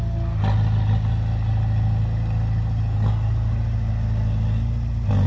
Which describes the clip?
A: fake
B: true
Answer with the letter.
B